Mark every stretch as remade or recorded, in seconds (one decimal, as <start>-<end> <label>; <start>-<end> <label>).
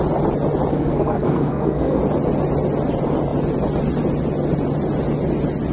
0.0-0.7 recorded; 0.7-2.0 remade; 2.0-5.7 recorded